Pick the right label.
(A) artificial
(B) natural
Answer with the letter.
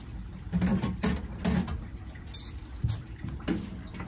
B